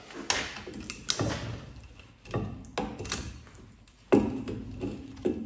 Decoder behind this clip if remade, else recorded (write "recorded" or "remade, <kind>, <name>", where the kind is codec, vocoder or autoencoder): recorded